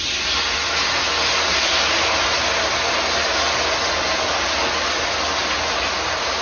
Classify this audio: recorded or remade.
recorded